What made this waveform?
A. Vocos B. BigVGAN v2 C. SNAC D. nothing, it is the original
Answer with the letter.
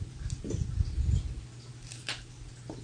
D